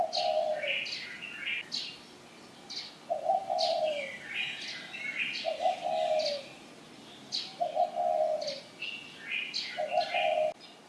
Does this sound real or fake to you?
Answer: real